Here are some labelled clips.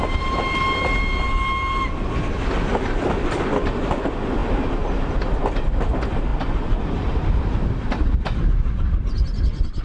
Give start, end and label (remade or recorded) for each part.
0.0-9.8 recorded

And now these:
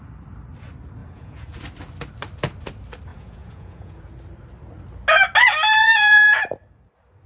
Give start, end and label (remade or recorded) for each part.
0.0-1.0 recorded; 1.0-1.6 remade; 1.6-3.1 recorded; 3.1-4.0 remade; 4.0-5.8 recorded; 5.8-6.4 remade; 6.4-7.3 recorded

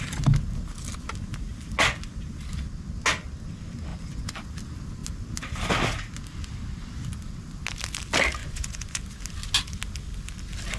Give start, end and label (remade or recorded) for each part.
0.0-3.9 recorded; 3.9-4.5 remade; 4.5-8.4 recorded; 8.4-9.0 remade; 9.0-10.8 recorded

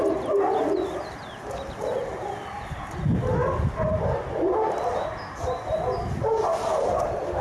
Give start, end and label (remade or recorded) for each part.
0.0-7.4 recorded

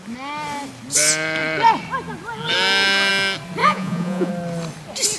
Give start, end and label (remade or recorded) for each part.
0.0-3.6 recorded; 3.6-4.3 remade; 4.3-5.2 recorded

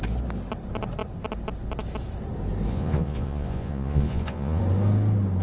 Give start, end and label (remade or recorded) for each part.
0.0-2.7 recorded; 2.7-4.6 remade; 4.6-5.4 recorded